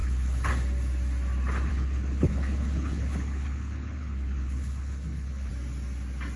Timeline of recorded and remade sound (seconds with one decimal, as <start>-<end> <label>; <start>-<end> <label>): 0.0-0.5 remade; 0.5-1.7 recorded; 1.7-5.5 remade; 5.5-6.4 recorded

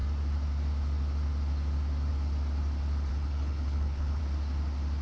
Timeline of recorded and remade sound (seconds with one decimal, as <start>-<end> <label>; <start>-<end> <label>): 0.0-3.1 recorded; 3.1-4.2 remade; 4.2-5.0 recorded

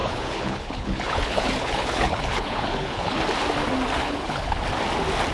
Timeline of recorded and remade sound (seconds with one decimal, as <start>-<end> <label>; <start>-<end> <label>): 0.0-3.2 remade; 3.2-4.0 recorded; 4.0-4.6 remade; 4.6-5.3 recorded

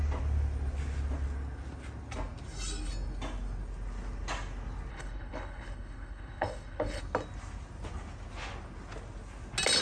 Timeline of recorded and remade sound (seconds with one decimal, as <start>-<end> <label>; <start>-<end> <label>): 0.0-4.9 recorded; 4.9-7.0 remade; 7.0-9.8 recorded

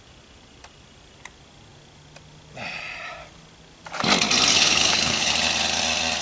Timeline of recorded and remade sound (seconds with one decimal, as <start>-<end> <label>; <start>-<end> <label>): 0.0-4.5 recorded; 4.5-5.3 remade; 5.3-6.2 recorded

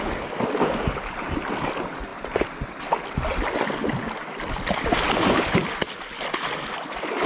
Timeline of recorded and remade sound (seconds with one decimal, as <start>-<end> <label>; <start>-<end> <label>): 0.0-7.3 recorded

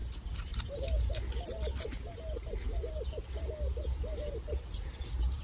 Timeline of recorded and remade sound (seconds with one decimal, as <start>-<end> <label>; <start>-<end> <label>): 0.0-5.4 recorded